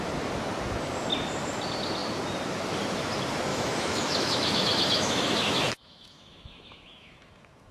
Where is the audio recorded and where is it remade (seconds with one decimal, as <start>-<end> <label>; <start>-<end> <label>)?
0.0-3.5 recorded; 3.5-7.7 remade